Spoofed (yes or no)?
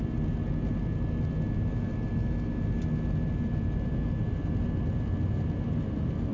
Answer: no